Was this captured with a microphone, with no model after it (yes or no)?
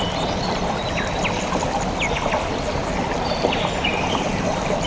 yes